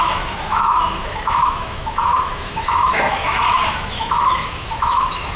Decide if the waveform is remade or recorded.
remade